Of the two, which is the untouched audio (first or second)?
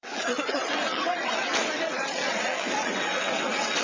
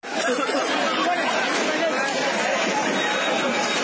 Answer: second